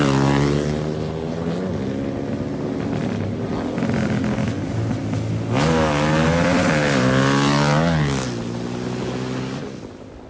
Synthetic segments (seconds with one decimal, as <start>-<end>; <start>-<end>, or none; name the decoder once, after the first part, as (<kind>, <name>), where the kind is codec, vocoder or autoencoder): none